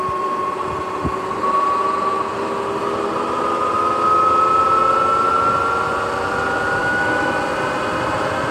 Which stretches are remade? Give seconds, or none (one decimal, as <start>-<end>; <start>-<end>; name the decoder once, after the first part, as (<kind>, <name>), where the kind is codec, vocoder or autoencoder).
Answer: 6.8-7.4 (autoencoder, DAC-VAE)